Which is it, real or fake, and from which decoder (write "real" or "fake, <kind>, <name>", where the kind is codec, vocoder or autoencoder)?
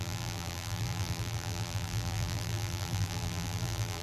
fake, vocoder, BigVGAN v2